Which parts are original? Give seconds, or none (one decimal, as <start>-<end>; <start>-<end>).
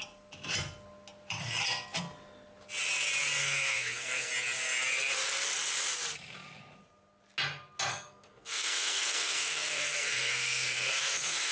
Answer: 0.0-3.4; 4.3-7.9